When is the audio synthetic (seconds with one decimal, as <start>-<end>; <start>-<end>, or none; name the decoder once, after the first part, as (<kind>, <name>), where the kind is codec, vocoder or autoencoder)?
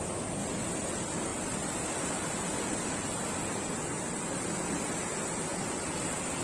none